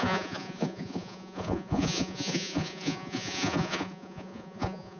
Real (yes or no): no